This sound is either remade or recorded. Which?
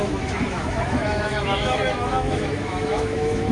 remade